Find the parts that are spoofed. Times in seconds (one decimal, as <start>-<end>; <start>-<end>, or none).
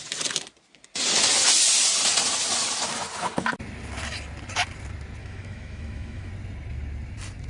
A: 5.2-6.3